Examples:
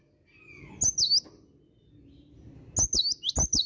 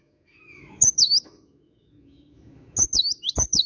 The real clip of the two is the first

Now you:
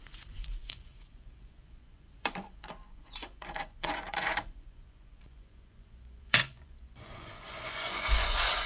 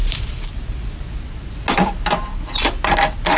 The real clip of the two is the second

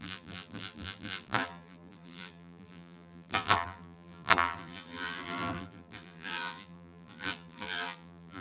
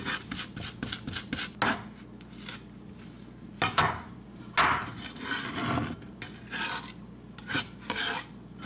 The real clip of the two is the second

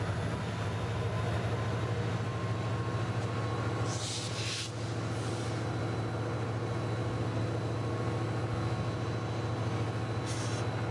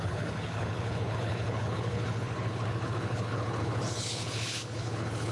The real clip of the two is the first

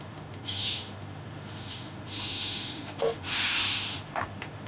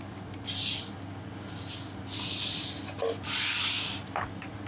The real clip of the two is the second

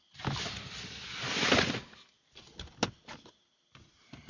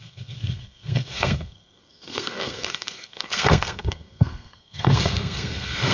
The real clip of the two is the first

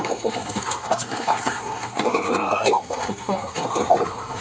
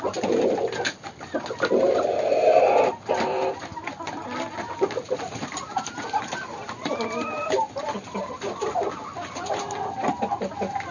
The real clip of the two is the second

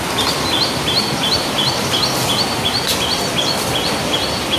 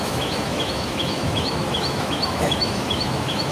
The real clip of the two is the first